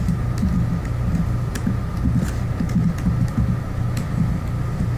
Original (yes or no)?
yes